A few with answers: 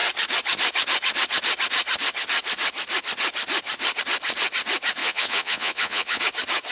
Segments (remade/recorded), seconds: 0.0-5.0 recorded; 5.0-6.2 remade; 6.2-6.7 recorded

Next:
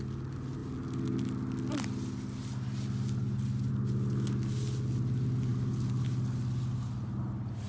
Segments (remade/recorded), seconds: 0.0-7.7 recorded

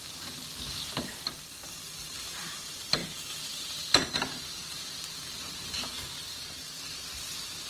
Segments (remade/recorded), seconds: 0.0-1.9 recorded; 1.9-2.6 remade; 2.6-3.0 recorded; 3.0-7.0 remade; 7.0-7.7 recorded

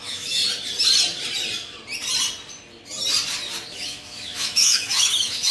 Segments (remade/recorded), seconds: 0.0-0.4 remade; 0.4-3.7 recorded; 3.7-5.5 remade

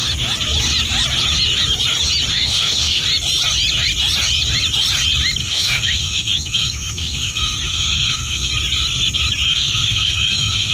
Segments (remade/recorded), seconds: 0.0-2.3 recorded; 2.3-3.0 remade; 3.0-5.4 recorded; 5.4-8.5 remade; 8.5-9.5 recorded; 9.5-10.7 remade